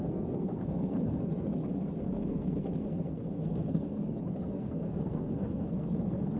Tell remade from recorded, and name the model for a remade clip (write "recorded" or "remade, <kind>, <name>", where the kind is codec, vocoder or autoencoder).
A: remade, codec, SNAC